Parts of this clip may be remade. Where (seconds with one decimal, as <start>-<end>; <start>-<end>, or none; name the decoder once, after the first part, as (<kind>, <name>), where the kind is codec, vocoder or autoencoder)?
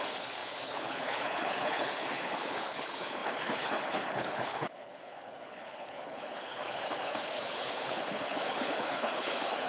0.0-9.7 (codec, HILCodec)